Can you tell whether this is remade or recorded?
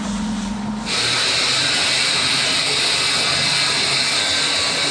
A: recorded